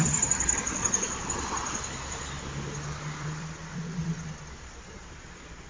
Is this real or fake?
fake